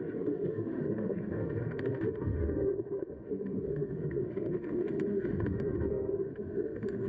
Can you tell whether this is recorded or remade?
remade